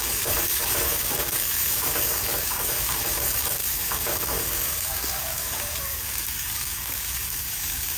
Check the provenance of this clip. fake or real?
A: fake